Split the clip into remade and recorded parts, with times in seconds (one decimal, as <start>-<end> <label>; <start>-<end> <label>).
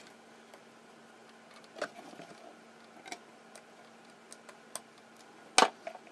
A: 0.0-6.1 recorded